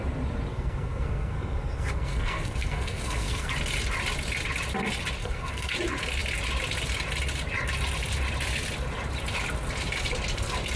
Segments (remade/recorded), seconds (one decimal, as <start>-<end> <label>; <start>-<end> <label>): 0.0-0.5 recorded; 0.5-3.5 remade; 3.5-5.2 recorded; 5.2-5.7 remade; 5.7-10.8 recorded